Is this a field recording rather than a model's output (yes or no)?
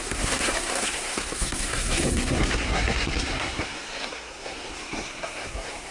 no